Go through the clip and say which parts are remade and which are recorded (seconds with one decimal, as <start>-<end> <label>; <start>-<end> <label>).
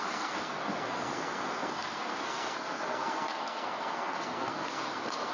0.0-5.3 remade